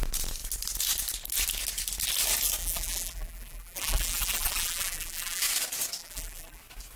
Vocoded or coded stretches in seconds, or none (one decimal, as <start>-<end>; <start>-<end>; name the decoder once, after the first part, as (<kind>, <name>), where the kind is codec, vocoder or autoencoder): 2.6-5.4 (vocoder, BigVGAN v2); 6.0-6.6